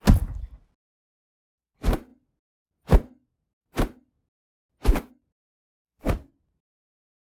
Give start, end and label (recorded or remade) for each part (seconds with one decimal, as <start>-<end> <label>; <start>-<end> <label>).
0.0-7.2 recorded